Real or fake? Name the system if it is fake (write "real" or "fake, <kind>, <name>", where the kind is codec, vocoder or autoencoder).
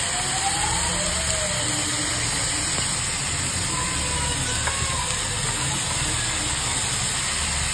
real